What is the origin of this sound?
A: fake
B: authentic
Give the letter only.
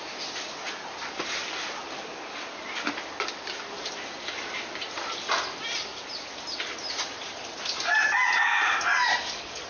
B